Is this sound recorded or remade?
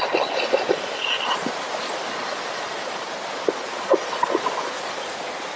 recorded